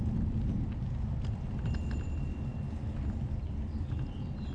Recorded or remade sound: recorded